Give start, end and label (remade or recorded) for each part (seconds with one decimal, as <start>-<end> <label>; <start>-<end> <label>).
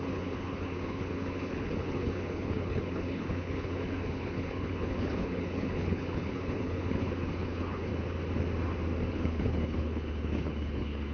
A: 0.0-7.9 remade; 7.9-9.1 recorded; 9.1-11.1 remade